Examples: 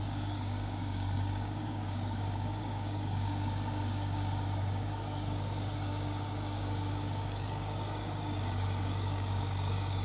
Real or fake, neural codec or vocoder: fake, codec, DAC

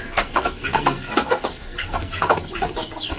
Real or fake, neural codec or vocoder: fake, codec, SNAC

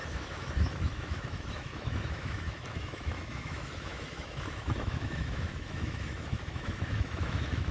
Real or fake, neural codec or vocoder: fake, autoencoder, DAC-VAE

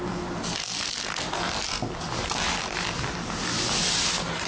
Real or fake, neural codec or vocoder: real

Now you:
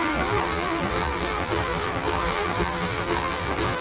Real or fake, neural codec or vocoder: fake, vocoder, BigVGAN v2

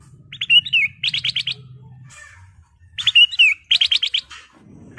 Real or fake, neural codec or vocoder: real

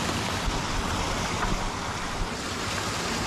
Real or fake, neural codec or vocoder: real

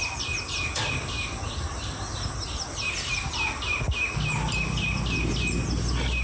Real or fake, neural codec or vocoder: real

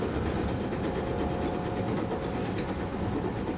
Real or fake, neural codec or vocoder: real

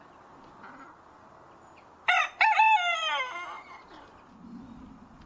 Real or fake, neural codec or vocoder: real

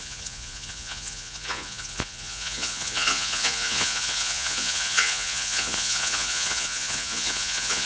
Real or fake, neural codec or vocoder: fake, vocoder, Vocos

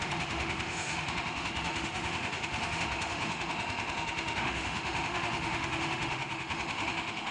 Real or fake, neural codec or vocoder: fake, autoencoder, DAC-VAE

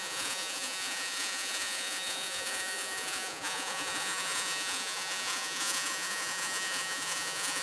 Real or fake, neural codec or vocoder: fake, vocoder, Vocos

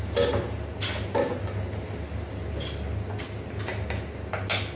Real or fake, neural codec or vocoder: real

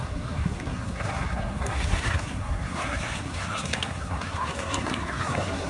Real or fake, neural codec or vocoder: fake, codec, SNAC